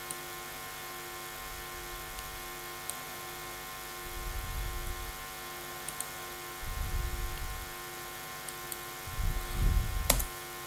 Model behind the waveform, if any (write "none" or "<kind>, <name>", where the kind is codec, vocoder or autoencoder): none